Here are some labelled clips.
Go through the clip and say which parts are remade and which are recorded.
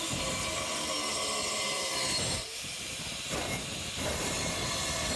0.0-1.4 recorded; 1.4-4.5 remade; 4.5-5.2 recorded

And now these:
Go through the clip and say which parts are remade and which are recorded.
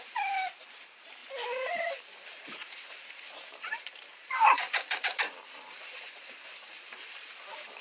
0.0-1.2 remade; 1.2-1.8 recorded; 1.8-7.8 remade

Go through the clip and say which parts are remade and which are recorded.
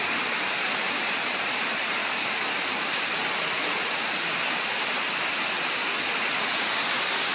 0.0-2.0 remade; 2.0-6.4 recorded; 6.4-7.3 remade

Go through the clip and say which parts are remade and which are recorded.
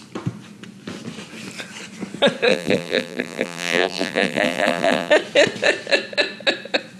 0.0-2.5 recorded; 2.5-5.1 remade; 5.1-7.0 recorded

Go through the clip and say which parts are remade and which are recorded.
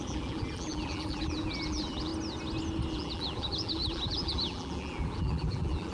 0.0-2.1 remade; 2.1-2.9 recorded; 2.9-5.9 remade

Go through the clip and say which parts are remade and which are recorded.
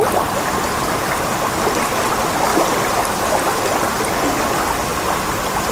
0.0-5.7 recorded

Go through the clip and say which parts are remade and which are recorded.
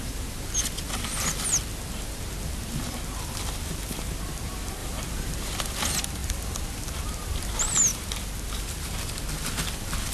0.0-4.8 recorded; 4.8-5.6 remade; 5.6-6.2 recorded; 6.2-6.7 remade; 6.7-10.1 recorded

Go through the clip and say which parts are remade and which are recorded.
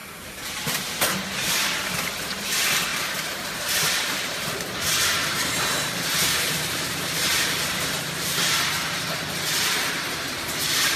0.0-11.0 remade